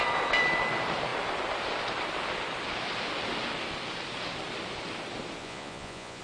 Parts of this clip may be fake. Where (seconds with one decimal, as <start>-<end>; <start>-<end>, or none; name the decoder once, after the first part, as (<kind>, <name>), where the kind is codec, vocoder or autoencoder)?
5.4-6.2 (vocoder, Vocos)